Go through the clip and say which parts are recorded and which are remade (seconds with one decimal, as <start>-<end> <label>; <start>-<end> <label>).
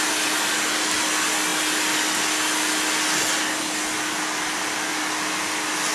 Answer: 0.0-5.9 recorded